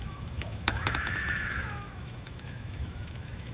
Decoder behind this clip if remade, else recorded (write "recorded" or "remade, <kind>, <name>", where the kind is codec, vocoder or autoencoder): remade, autoencoder, DAC-VAE